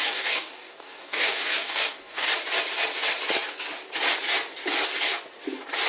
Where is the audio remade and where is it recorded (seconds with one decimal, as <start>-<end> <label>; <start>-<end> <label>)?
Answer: 0.0-2.3 remade; 2.3-5.9 recorded